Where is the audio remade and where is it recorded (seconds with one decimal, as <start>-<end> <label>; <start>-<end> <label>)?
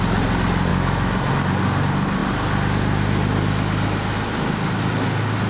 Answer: 0.0-0.7 recorded; 0.7-1.3 remade; 1.3-5.5 recorded